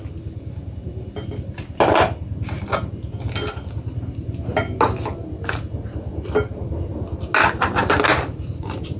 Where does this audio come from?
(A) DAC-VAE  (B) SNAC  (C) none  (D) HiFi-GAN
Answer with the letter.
C